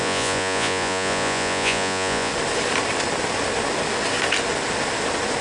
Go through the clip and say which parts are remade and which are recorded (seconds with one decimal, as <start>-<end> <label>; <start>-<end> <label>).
0.0-2.3 remade; 2.3-5.4 recorded